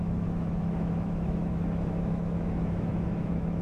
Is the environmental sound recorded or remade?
remade